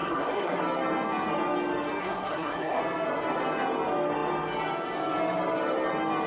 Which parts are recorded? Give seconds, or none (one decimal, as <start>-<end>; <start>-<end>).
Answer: 0.6-2.0; 2.8-6.3

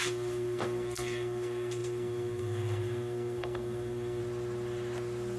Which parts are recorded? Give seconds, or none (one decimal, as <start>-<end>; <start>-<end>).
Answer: 4.2-5.4

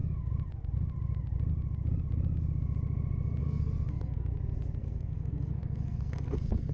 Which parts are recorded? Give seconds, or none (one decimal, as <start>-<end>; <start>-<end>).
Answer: 0.0-3.4; 4.3-4.8

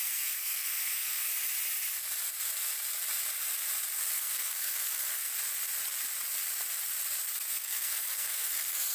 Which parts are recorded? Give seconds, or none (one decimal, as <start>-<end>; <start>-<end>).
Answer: 1.3-4.1; 5.3-7.5

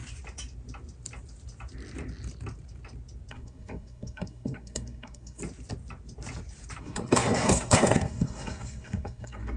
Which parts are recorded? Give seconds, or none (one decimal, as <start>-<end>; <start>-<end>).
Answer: 0.0-3.3; 5.4-6.8

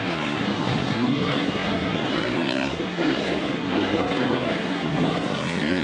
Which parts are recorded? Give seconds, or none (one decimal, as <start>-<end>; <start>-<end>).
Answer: none

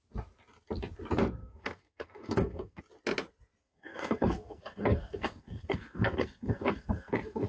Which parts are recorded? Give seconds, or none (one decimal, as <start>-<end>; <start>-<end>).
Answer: 0.0-1.4; 2.8-3.6

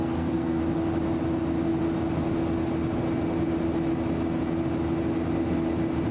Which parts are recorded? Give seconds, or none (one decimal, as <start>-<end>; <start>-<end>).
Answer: 0.6-6.1